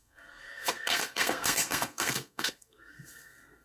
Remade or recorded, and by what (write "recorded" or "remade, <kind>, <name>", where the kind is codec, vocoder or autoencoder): remade, codec, SNAC